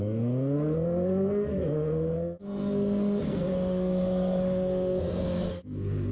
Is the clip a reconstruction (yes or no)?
yes